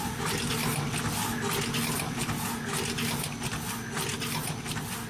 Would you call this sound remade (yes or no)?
no